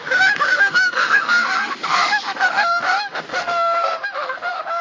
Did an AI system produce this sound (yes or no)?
yes